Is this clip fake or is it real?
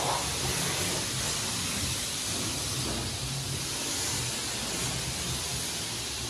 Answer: real